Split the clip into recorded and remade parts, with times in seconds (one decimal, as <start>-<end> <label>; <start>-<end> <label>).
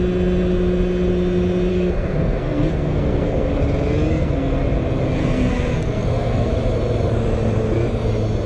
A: 0.0-1.7 recorded; 1.7-3.5 remade; 3.5-4.1 recorded; 4.1-4.6 remade; 4.6-5.2 recorded; 5.2-6.5 remade; 6.5-8.5 recorded